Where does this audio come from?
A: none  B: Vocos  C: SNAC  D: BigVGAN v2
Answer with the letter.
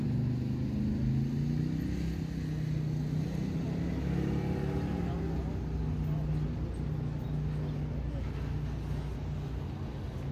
A